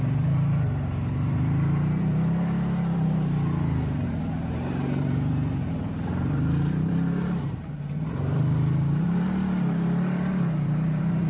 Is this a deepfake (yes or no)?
yes